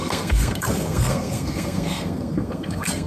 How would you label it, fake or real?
fake